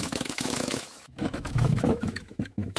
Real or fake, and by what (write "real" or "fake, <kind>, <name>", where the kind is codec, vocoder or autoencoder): fake, autoencoder, DAC-VAE